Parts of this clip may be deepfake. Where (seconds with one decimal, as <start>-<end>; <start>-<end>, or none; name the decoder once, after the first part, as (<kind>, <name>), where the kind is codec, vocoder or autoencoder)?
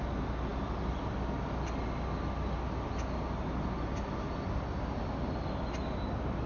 none